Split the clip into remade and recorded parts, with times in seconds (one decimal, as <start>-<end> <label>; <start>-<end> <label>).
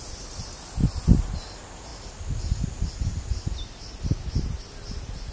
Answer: 0.0-5.3 recorded